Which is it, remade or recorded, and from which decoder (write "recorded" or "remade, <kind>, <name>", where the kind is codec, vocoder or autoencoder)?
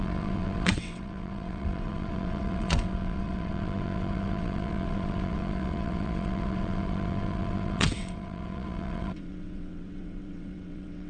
remade, vocoder, WaveNeXt